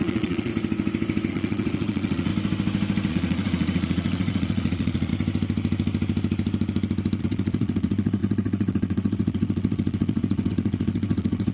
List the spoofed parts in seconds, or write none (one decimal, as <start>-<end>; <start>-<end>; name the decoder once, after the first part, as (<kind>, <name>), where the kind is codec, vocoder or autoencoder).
0.0-0.5 (vocoder, Vocos); 1.3-2.3; 3.1-5.1; 7.2-11.5